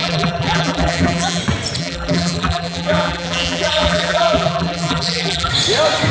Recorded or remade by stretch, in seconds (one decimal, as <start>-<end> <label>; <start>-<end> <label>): 0.0-1.4 remade; 1.4-1.8 recorded; 1.8-5.5 remade; 5.5-6.1 recorded